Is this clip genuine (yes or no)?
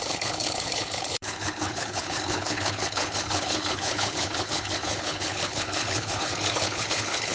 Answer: no